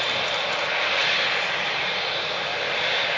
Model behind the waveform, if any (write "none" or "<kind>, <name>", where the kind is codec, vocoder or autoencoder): none